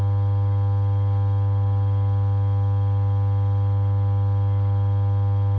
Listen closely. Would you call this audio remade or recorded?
recorded